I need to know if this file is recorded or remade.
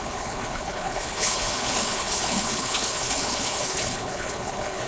remade